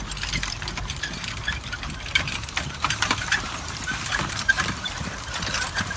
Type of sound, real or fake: fake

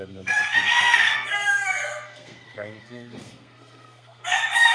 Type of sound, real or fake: fake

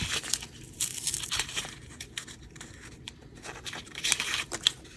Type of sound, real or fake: fake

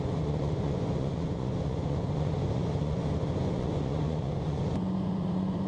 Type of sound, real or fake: fake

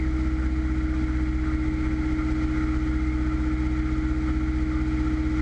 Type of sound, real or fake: real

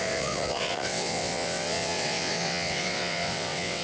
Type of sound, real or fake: fake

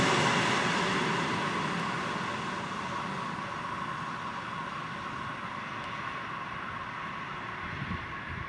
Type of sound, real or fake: real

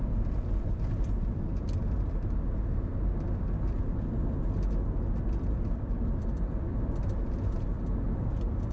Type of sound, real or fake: fake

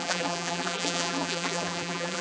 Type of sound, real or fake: fake